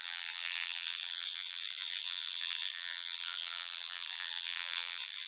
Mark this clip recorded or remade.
remade